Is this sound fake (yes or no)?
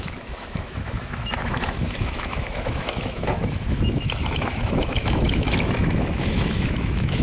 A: yes